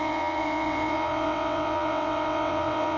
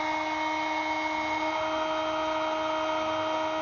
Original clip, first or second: second